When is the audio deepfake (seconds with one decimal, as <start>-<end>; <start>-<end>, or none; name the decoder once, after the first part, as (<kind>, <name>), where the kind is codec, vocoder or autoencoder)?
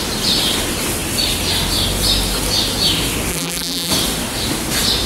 3.3-3.9 (vocoder, BigVGAN v2)